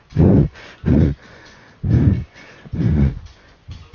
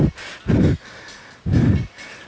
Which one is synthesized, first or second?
first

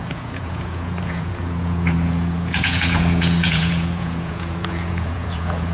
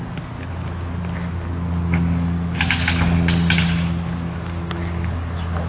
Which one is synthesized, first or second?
first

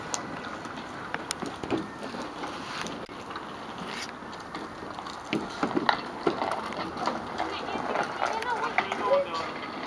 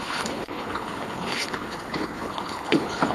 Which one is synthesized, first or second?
second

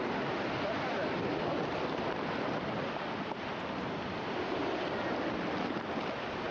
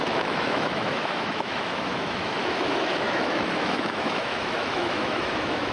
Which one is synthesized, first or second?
second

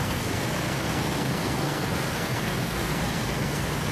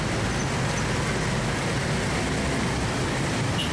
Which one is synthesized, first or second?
first